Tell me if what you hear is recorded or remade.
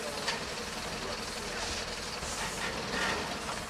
recorded